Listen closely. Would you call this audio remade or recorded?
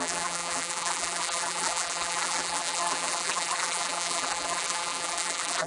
remade